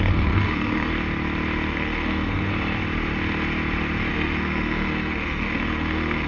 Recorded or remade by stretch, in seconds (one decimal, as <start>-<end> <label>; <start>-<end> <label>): 0.0-0.9 remade; 0.9-1.7 recorded; 1.7-2.5 remade; 2.5-4.1 recorded; 4.1-6.3 remade